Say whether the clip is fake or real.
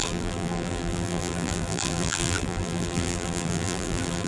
fake